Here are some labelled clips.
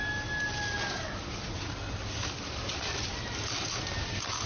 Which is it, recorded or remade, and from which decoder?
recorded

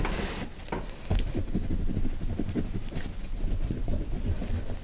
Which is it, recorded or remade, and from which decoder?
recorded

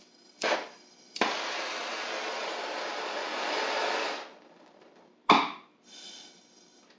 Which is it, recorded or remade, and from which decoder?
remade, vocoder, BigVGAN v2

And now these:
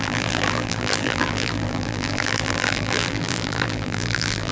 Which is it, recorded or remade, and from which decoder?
remade, vocoder, BigVGAN v2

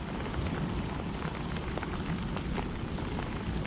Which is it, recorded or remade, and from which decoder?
recorded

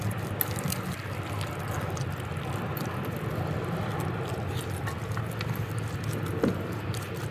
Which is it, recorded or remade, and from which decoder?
recorded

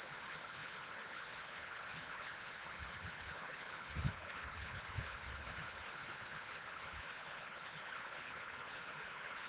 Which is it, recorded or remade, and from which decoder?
remade, codec, HILCodec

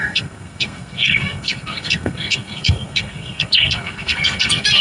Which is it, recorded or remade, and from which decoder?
remade, codec, SNAC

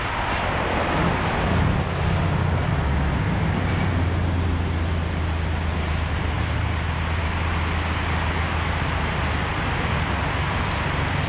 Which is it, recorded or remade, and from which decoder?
recorded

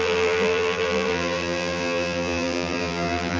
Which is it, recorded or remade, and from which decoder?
remade, vocoder, BigVGAN v2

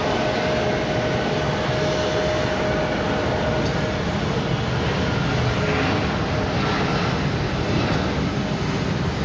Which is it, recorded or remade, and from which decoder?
recorded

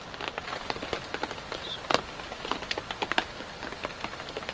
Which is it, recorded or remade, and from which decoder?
recorded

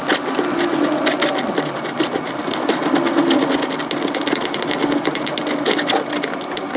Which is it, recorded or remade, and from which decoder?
recorded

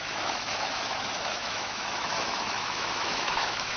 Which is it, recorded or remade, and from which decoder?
remade, autoencoder, DAC-VAE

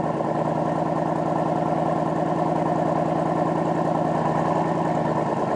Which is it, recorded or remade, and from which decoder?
recorded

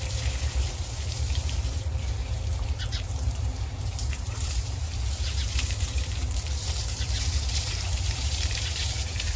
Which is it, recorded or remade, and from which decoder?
remade, vocoder, BigVGAN v2